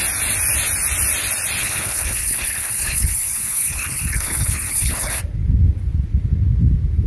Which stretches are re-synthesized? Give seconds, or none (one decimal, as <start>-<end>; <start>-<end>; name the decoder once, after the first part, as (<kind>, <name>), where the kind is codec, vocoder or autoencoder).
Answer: 1.6-5.2 (codec, HILCodec)